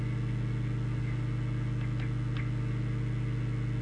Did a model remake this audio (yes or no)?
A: no